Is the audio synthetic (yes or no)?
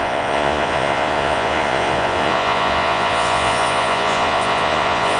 yes